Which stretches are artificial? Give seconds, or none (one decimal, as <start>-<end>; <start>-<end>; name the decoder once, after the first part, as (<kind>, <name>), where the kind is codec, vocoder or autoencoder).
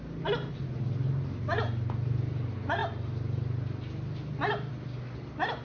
none